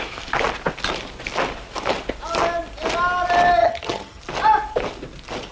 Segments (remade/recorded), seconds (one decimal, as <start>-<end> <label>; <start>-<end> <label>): 0.0-3.6 recorded; 3.6-4.2 remade; 4.2-5.5 recorded